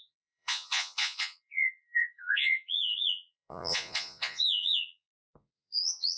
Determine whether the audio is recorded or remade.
remade